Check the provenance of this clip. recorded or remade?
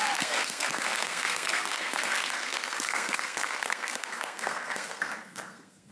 remade